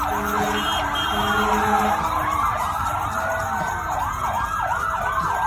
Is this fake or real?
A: real